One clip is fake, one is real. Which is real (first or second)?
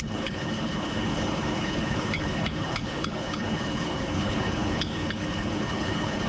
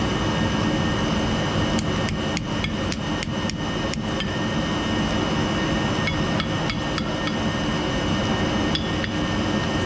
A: second